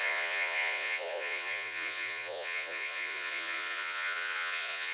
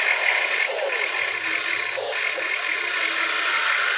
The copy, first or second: first